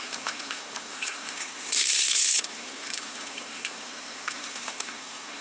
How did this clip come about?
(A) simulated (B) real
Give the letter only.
A